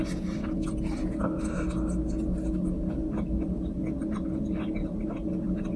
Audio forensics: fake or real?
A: real